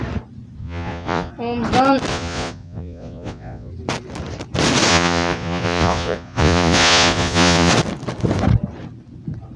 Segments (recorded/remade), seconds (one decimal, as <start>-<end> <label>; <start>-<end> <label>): 0.0-0.6 recorded; 0.6-1.3 remade; 1.3-2.1 recorded; 2.1-3.7 remade; 3.7-4.9 recorded; 4.9-7.7 remade; 7.7-9.6 recorded